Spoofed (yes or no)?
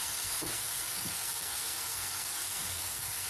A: yes